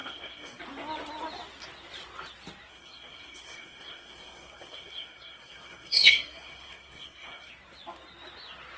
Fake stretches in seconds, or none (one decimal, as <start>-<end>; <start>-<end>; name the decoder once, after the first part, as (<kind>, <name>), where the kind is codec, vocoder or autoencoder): 0.0-0.6 (codec, SNAC); 2.7-7.5

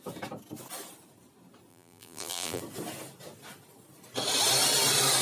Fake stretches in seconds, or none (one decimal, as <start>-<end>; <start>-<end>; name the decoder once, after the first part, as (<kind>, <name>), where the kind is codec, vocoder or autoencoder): 1.7-2.6 (vocoder, BigVGAN v2)

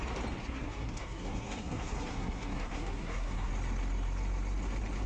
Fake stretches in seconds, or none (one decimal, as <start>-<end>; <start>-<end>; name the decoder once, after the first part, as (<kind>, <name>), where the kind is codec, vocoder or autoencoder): 0.4-3.5 (codec, SNAC)

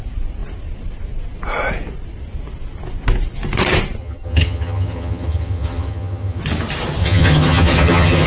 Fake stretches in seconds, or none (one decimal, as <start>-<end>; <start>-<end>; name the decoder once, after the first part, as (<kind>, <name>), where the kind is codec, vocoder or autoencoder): 4.0-6.4 (vocoder, HiFi-GAN); 7.0-8.3

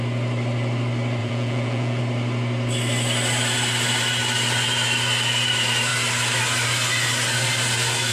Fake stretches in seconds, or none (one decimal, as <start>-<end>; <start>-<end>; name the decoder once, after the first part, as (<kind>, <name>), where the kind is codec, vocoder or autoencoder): 1.2-2.0 (vocoder, Vocos)